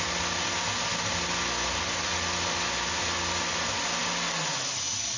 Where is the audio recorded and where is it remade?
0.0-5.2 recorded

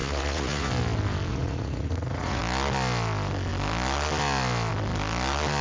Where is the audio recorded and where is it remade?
0.0-0.7 remade; 0.7-1.3 recorded; 1.3-2.4 remade; 2.4-5.6 recorded

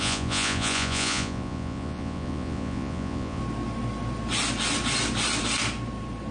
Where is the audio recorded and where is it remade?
0.0-3.4 remade; 3.4-6.3 recorded

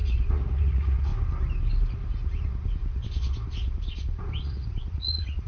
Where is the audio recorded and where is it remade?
0.0-1.1 remade; 1.1-4.4 recorded; 4.4-5.5 remade

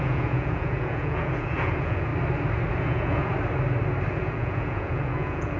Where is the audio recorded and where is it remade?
0.0-2.1 remade; 2.1-2.7 recorded; 2.7-3.3 remade; 3.3-4.1 recorded; 4.1-5.6 remade